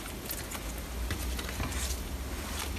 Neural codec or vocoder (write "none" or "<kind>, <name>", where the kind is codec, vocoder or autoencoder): none